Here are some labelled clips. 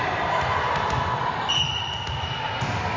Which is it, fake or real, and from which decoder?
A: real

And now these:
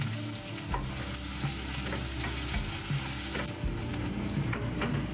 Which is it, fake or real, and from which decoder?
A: real